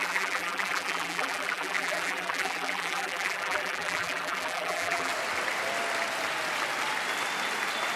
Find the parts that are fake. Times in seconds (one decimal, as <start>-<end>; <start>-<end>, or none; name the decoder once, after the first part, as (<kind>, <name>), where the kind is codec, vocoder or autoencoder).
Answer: 0.0-5.1 (vocoder, BigVGAN v2)